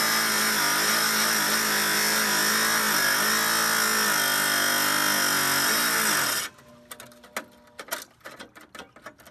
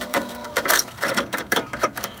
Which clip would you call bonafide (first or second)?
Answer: first